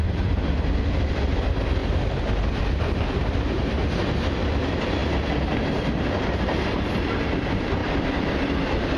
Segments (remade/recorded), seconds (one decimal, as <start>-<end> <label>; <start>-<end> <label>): 0.0-1.8 recorded; 1.8-3.6 remade; 3.6-7.8 recorded; 7.8-8.3 remade; 8.3-9.0 recorded